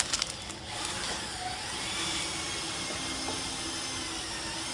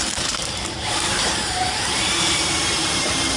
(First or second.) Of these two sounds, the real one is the first